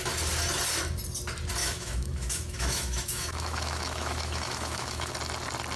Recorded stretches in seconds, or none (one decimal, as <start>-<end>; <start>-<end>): 0.0-1.6; 5.1-5.8